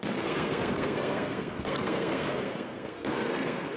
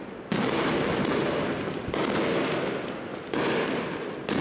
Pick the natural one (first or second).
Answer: second